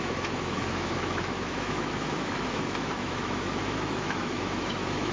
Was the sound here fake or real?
fake